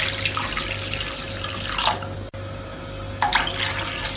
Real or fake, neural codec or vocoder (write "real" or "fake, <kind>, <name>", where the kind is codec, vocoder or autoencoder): real